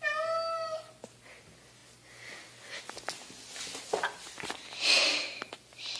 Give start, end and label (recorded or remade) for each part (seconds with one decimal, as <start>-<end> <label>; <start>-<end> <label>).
0.0-6.0 recorded